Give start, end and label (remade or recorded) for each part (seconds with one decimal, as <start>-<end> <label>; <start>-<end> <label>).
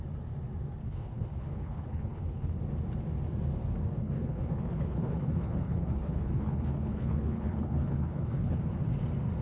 0.0-0.8 recorded; 0.8-2.6 remade; 2.6-4.0 recorded; 4.0-8.6 remade; 8.6-9.4 recorded